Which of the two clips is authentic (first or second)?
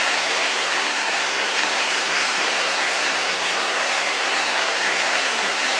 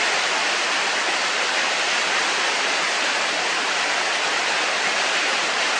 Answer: second